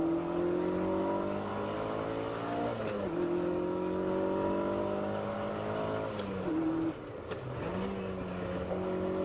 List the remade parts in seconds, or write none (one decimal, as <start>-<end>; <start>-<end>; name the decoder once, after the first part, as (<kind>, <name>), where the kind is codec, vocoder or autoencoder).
none